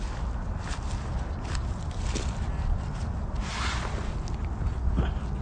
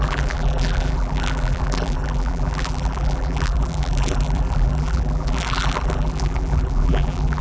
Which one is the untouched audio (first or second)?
first